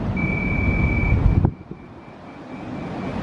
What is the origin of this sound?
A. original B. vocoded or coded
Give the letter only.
A